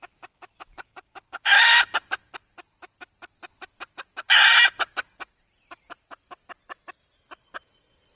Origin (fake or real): fake